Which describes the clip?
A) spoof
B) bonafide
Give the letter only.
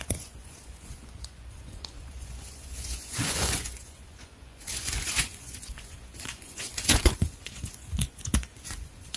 A